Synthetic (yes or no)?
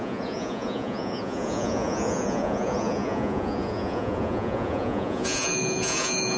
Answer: yes